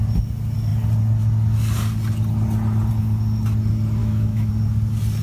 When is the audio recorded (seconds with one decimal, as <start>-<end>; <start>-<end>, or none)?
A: 0.0-4.0; 4.5-5.2